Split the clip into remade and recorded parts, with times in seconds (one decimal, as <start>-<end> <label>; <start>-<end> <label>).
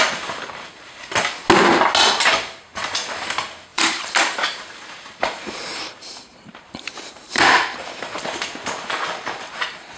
0.0-3.7 recorded; 3.7-8.0 remade; 8.0-10.0 recorded